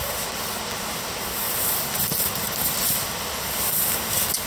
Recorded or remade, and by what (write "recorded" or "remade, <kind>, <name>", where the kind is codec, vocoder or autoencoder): recorded